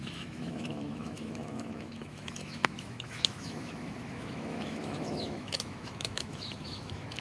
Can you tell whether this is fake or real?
fake